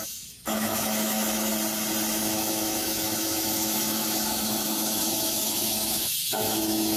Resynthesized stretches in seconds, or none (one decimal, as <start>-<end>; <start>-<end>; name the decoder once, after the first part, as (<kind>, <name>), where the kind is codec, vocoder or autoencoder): 0.0-1.5 (autoencoder, DAC-VAE); 2.1-7.0